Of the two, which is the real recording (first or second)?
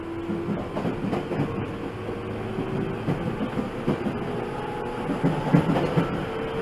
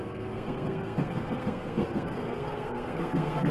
first